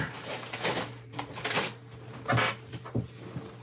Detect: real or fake fake